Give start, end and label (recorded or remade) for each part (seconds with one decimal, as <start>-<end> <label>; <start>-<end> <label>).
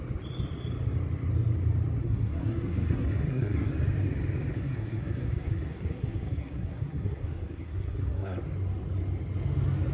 0.0-2.0 recorded; 2.0-3.7 remade; 3.7-4.5 recorded; 4.5-8.4 remade; 8.4-9.9 recorded